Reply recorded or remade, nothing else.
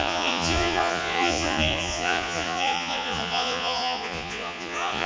remade